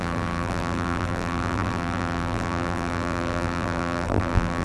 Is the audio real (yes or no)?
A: no